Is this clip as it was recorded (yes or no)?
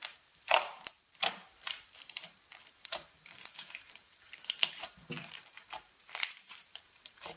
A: no